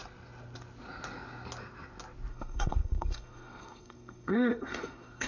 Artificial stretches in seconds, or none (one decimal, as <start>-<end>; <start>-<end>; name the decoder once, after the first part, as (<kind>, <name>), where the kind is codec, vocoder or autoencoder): 2.3-5.3 (codec, SNAC)